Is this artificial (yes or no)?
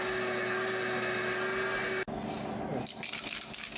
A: no